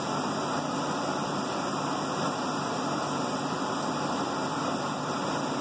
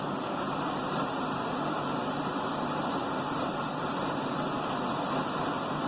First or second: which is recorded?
first